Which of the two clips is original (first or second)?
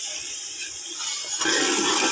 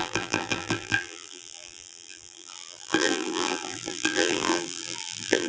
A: first